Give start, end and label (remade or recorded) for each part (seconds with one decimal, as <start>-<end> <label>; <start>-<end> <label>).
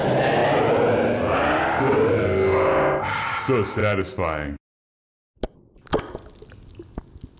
0.0-7.4 recorded